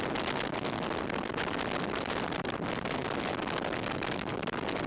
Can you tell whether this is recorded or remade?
recorded